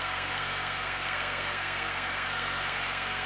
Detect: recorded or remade remade